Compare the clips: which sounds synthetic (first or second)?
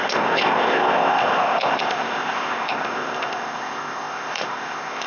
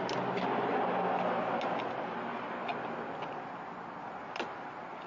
first